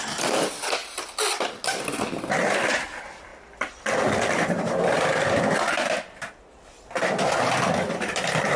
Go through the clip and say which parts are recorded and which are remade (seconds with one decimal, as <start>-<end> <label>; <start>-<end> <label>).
0.0-0.8 remade; 0.8-2.5 recorded; 2.5-8.6 remade